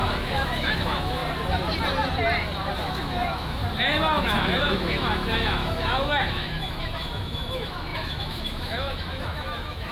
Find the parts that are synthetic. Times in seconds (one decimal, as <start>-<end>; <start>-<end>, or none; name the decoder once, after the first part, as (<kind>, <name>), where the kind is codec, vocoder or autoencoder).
0.0-1.2 (autoencoder, DAC-VAE); 2.8-3.6; 4.2-9.9